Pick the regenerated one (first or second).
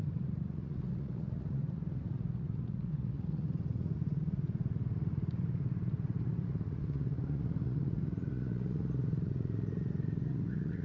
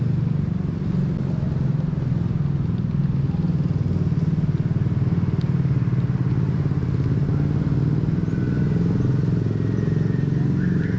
first